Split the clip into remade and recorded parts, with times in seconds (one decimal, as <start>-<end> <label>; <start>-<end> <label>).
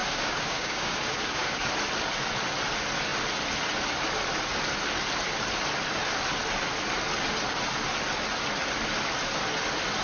0.0-1.7 remade; 1.7-10.0 recorded